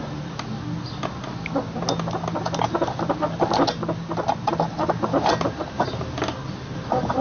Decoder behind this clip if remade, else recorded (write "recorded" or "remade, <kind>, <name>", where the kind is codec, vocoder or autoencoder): recorded